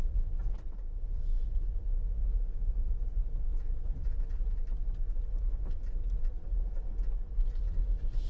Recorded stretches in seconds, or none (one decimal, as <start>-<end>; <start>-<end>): 0.0-2.2; 2.9-3.5; 4.5-8.3